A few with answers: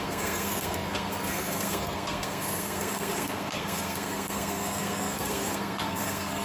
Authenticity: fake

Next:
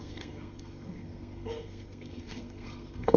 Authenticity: fake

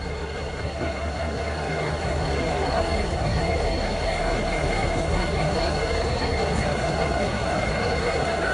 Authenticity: fake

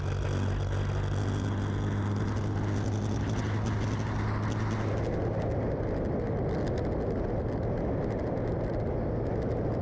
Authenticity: real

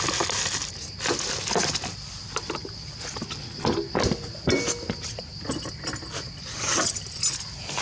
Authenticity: real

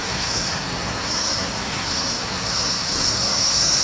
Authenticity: fake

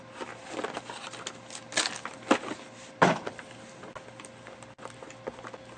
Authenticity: real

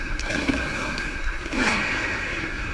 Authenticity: fake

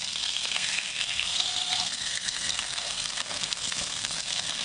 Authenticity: fake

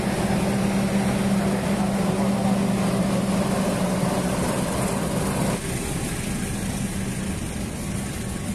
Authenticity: real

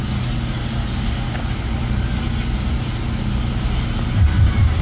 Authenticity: real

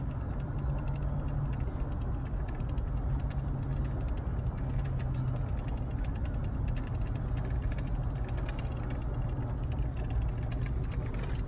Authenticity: real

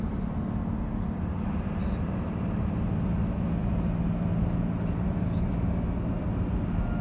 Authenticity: real